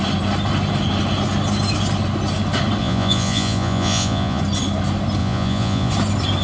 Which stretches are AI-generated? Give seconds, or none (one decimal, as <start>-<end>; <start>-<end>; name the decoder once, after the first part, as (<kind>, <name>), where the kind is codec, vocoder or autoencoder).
2.8-4.4 (vocoder, Vocos); 5.2-5.9